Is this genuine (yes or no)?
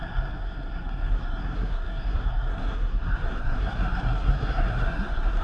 no